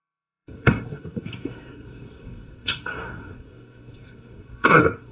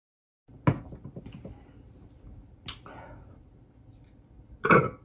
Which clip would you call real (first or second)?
second